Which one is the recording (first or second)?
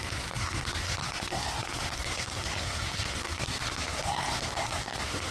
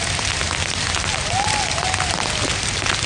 second